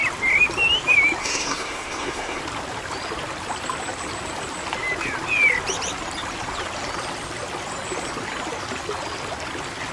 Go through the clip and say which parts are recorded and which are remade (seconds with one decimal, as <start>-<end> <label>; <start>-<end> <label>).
0.0-1.2 recorded; 1.2-2.4 remade; 2.4-9.9 recorded